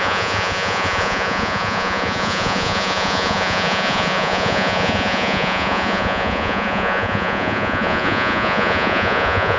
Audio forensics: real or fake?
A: fake